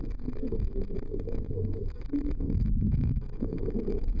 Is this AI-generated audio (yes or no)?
yes